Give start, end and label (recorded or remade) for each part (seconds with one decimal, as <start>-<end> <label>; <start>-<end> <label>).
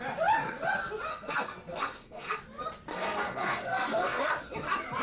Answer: 0.0-1.1 recorded; 1.1-2.4 remade; 2.4-2.9 recorded; 2.9-4.3 remade; 4.3-5.0 recorded